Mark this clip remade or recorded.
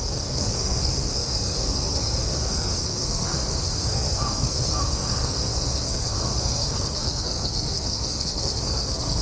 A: remade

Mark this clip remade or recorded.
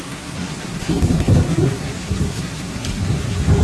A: remade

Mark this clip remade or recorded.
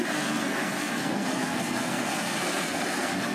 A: remade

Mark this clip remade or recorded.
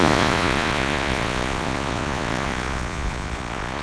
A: remade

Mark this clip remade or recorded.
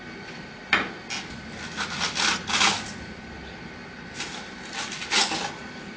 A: recorded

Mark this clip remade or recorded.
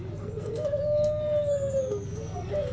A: remade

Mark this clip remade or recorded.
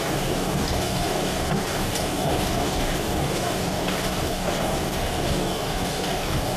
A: remade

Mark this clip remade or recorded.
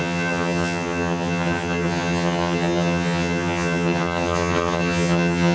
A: remade